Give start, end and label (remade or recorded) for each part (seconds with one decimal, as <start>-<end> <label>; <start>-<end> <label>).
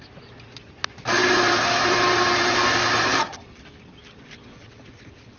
0.0-3.1 recorded; 3.1-5.4 remade